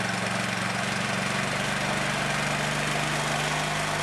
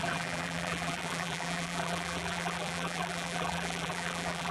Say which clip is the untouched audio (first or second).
first